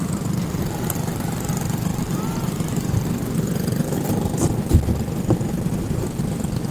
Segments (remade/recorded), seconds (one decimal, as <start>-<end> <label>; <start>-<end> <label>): 0.0-1.9 recorded; 1.9-3.1 remade; 3.1-6.7 recorded